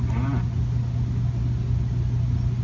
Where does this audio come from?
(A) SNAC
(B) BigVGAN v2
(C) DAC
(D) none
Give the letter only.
D